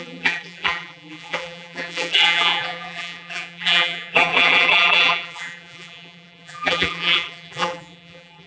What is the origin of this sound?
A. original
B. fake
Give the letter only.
B